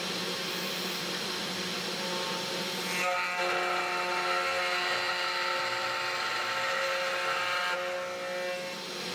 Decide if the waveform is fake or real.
real